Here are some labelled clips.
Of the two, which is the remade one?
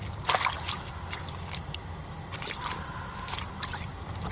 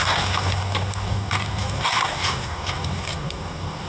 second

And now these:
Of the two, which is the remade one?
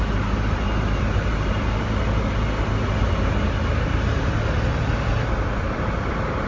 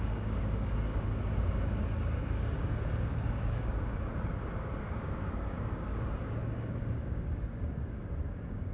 second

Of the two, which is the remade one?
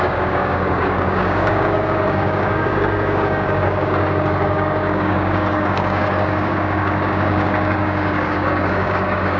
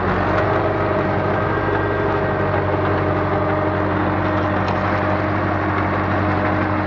first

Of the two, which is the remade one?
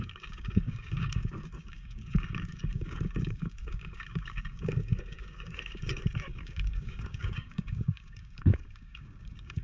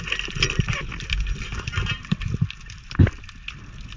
first